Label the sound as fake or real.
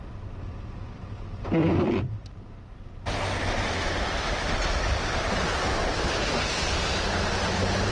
real